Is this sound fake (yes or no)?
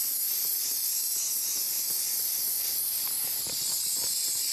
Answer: no